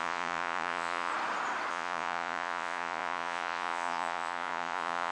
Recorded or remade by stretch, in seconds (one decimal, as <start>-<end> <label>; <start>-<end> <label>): 0.0-1.1 remade; 1.1-1.7 recorded; 1.7-5.1 remade